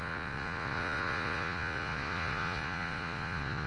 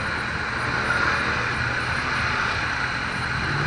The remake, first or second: first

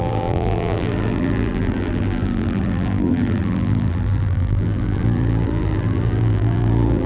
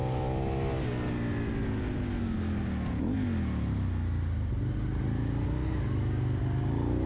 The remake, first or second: first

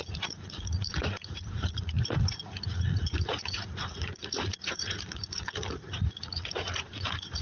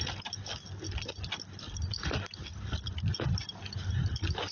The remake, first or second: first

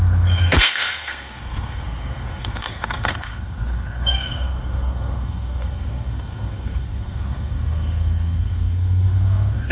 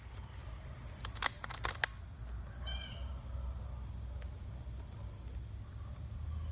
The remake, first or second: first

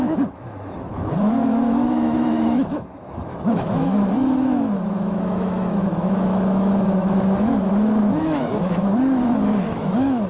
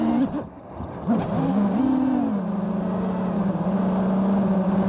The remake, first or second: first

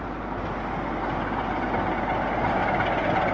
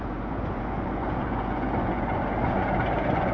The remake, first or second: second